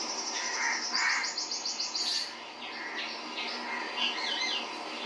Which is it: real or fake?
real